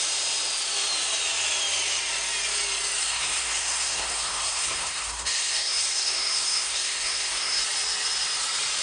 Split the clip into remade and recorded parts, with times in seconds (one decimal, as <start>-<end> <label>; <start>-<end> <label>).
0.0-3.0 recorded; 3.0-7.6 remade; 7.6-8.8 recorded